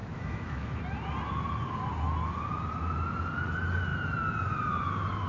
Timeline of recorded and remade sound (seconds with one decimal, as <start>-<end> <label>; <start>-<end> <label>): 0.0-0.8 remade; 0.8-5.3 recorded